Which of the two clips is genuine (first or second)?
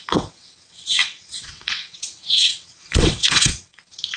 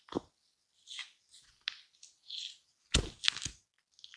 second